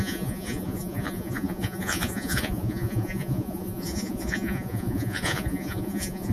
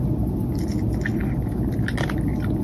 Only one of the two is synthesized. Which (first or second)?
first